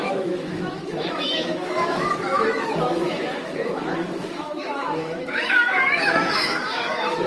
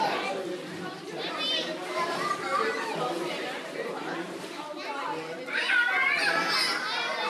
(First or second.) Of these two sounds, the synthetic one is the first